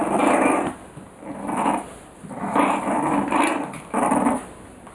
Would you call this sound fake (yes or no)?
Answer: no